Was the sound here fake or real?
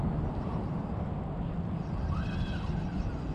real